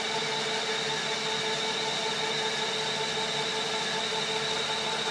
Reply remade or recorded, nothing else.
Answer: recorded